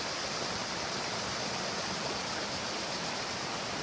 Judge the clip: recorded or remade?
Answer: recorded